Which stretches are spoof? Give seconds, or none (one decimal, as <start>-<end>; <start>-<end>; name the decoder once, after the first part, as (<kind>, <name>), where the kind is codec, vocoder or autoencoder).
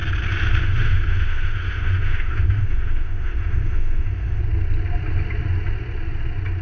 0.6-4.4 (autoencoder, DAC-VAE)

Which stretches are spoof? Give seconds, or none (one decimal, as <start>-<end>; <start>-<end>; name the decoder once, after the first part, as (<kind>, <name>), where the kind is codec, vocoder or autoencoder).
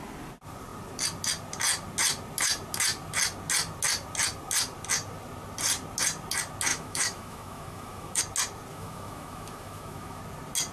6.7-8.2 (autoencoder, DAC-VAE); 8.7-10.2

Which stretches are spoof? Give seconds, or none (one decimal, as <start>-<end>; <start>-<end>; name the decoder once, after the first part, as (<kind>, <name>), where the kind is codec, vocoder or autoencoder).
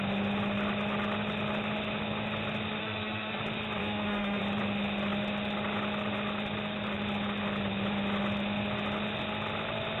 2.8-3.4 (autoencoder, DAC-VAE); 3.8-4.4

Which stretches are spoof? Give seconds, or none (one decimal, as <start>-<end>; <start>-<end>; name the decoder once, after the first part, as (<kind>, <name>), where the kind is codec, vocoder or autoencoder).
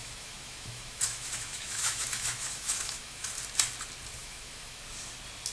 0.0-3.3 (autoencoder, DAC-VAE); 4.2-4.8